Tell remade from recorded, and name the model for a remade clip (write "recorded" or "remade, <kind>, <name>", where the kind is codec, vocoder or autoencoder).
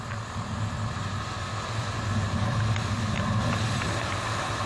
recorded